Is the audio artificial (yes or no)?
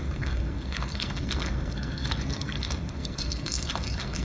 yes